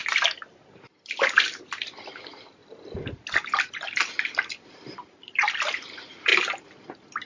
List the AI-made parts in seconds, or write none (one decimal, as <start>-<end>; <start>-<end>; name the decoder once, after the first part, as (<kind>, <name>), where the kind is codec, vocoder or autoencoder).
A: 2.1-2.6 (vocoder, BigVGAN v2); 3.6-6.3